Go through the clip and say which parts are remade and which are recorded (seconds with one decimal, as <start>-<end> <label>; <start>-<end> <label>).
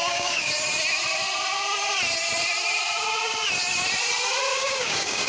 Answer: 0.0-0.5 remade; 0.5-4.5 recorded; 4.5-5.3 remade